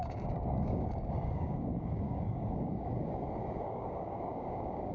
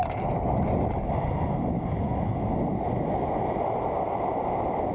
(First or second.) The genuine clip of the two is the second